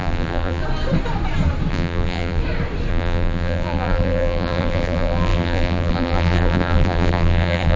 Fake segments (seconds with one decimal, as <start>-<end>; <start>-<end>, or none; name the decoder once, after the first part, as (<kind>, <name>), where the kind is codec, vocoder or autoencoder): 0.0-0.6 (vocoder, BigVGAN v2); 1.7-2.4; 2.9-7.8